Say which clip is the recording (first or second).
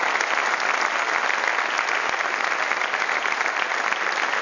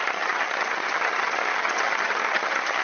first